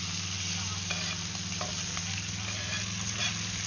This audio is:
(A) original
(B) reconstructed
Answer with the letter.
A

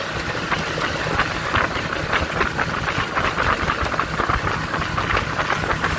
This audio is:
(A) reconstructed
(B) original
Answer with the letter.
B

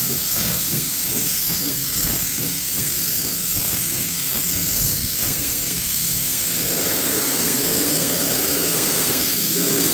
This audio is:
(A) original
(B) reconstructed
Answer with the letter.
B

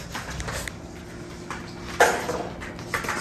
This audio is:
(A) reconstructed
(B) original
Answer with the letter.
B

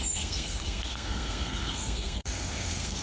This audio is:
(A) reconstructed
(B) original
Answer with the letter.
A